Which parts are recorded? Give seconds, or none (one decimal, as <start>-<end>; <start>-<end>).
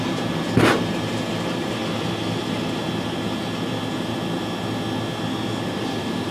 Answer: 1.8-5.6